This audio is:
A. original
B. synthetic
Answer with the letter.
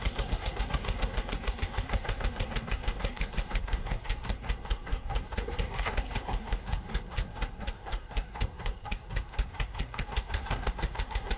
B